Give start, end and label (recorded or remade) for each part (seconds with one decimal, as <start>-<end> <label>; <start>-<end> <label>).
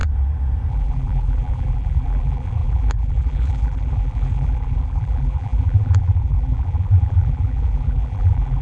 0.0-0.7 recorded; 0.7-8.6 remade